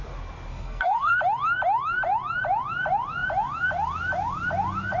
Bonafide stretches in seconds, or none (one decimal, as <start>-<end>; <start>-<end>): 0.0-0.5; 1.2-5.0

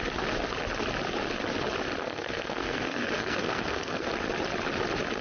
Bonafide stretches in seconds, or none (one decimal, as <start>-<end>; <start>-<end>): 0.0-2.0; 4.1-5.2

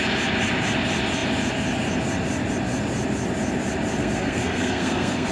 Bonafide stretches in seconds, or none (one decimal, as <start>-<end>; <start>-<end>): 0.0-4.0